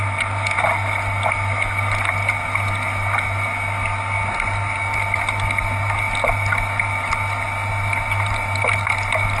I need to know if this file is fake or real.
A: real